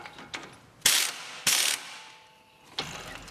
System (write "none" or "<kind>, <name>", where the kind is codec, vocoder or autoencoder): none